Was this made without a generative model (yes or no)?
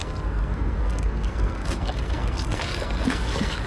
no